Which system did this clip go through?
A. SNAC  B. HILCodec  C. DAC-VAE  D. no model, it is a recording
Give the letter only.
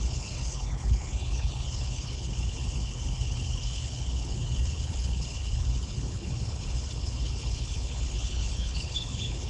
B